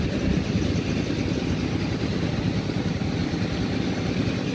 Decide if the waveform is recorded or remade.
recorded